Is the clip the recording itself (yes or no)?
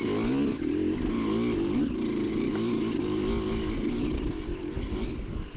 yes